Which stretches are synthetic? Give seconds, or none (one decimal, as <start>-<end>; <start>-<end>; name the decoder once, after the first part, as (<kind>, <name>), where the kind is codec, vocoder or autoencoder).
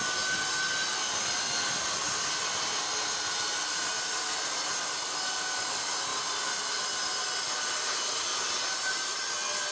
8.3-9.2 (vocoder, BigVGAN v2)